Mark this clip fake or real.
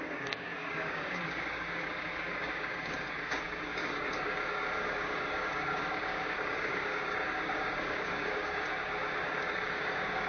fake